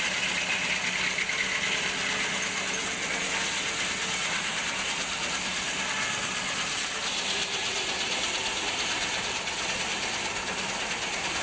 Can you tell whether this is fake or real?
real